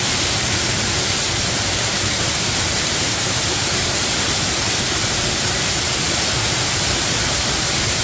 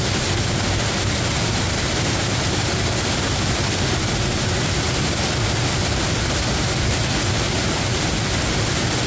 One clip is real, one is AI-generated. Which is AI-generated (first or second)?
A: first